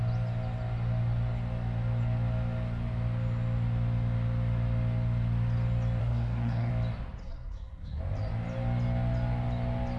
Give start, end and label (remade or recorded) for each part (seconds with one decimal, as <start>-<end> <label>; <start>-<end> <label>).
0.0-6.0 recorded; 6.0-6.7 remade; 6.7-7.2 recorded; 7.2-8.0 remade; 8.0-10.0 recorded

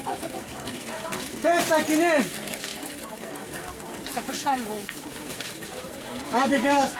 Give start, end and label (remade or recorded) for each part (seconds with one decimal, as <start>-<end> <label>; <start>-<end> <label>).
0.0-1.5 remade; 1.5-2.2 recorded; 2.2-7.0 remade

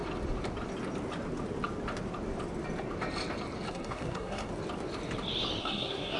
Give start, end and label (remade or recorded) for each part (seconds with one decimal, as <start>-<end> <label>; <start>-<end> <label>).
0.0-3.7 recorded; 3.7-4.5 remade; 4.5-5.6 recorded; 5.6-6.2 remade

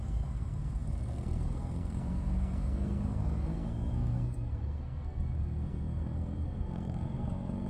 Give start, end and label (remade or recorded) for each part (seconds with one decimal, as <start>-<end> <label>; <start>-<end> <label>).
0.0-7.7 remade

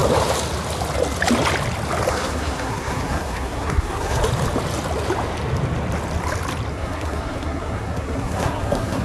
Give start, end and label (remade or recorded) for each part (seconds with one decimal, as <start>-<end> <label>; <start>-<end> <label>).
0.0-2.1 recorded; 2.1-4.2 remade; 4.2-6.7 recorded; 6.7-9.0 remade